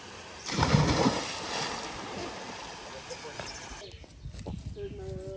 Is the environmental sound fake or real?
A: real